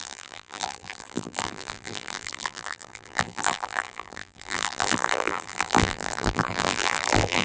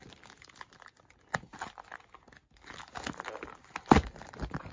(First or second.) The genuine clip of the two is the second